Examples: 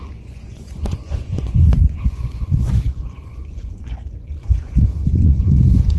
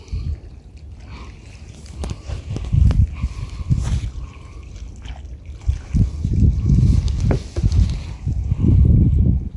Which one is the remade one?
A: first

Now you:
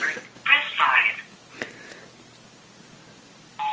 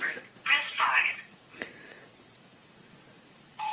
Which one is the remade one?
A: second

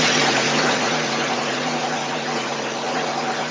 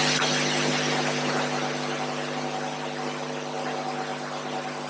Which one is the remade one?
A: first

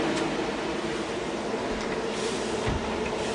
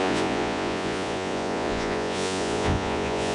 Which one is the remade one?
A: second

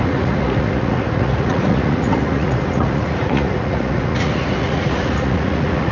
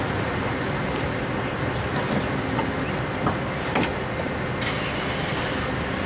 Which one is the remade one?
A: first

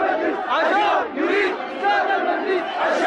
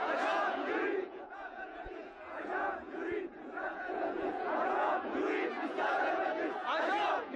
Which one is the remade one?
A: second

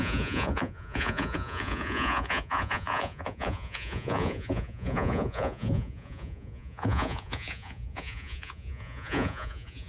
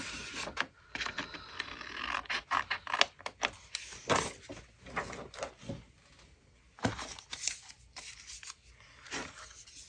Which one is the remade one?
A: first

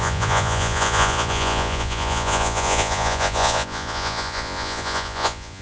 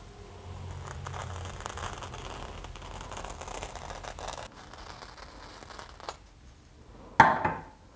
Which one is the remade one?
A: first